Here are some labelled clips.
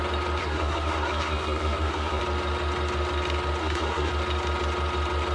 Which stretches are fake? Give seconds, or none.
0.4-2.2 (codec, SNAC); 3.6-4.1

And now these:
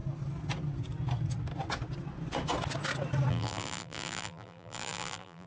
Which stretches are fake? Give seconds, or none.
3.3-5.5 (vocoder, BigVGAN v2)

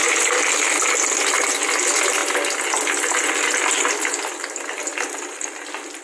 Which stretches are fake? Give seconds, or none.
none

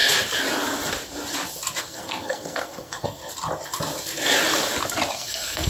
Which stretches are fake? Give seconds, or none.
1.8-3.2 (codec, SNAC); 5.1-5.7

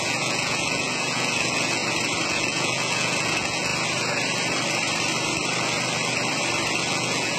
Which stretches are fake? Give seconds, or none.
0.0-1.8 (vocoder, Vocos); 2.3-3.7; 6.9-7.4

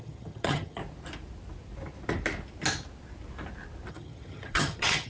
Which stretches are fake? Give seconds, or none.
0.0-0.8 (vocoder, HiFi-GAN); 3.9-5.1